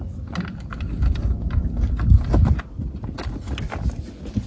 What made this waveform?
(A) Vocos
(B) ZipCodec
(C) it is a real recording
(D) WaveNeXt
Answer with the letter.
C